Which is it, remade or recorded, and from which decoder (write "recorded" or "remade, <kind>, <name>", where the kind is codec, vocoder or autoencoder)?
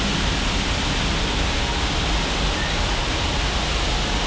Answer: recorded